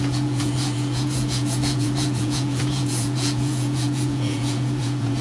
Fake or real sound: fake